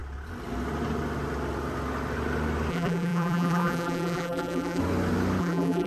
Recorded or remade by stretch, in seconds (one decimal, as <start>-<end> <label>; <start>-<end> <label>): 0.0-2.7 recorded; 2.7-4.8 remade; 4.8-5.4 recorded; 5.4-5.9 remade